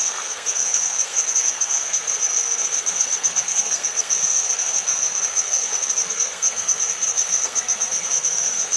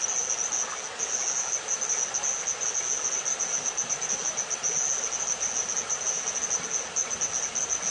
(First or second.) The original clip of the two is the second